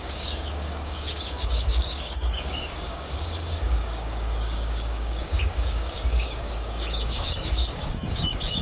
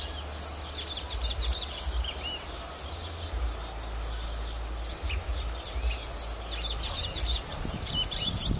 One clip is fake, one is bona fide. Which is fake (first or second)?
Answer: first